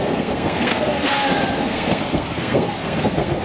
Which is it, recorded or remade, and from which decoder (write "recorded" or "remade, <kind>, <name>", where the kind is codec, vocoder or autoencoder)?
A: remade, codec, SNAC